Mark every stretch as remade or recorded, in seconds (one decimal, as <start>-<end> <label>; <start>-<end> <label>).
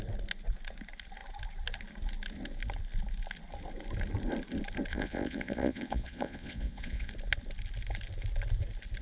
0.0-4.9 recorded; 4.9-7.1 remade; 7.1-9.0 recorded